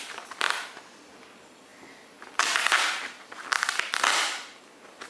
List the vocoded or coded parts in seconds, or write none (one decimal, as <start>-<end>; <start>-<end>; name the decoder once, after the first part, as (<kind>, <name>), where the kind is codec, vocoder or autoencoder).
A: 1.7-4.6 (vocoder, BigVGAN v2)